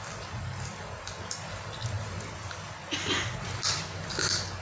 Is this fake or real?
real